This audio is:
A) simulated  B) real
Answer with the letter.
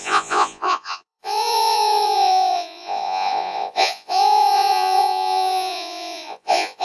A